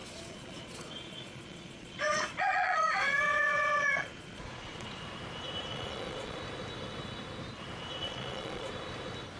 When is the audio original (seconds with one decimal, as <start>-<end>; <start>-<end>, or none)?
5.0-5.7; 6.4-8.0; 8.7-9.4